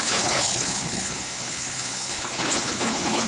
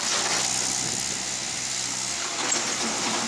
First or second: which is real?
second